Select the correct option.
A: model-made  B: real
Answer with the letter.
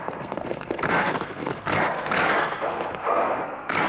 A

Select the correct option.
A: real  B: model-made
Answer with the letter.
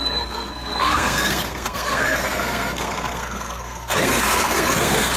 B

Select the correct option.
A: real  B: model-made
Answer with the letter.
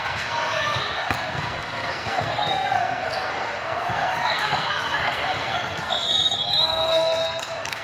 B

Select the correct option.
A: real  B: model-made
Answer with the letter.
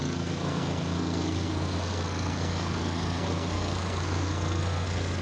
B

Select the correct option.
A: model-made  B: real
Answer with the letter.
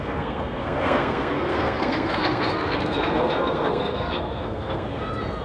A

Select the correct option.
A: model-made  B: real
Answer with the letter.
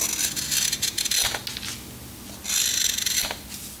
B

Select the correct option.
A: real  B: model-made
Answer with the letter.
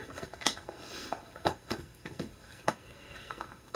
B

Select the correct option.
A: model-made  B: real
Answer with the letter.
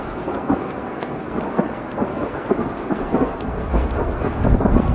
A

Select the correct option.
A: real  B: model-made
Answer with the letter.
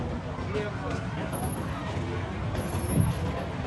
A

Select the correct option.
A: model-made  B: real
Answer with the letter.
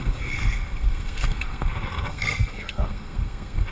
A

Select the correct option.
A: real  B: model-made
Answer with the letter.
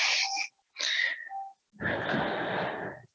A